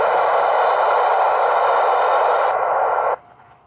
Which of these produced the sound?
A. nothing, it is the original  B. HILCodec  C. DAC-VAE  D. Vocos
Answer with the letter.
A